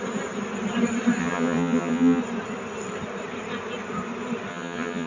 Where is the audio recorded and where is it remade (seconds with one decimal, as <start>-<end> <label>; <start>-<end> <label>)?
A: 0.0-1.2 recorded; 1.2-2.2 remade; 2.2-4.5 recorded; 4.5-5.1 remade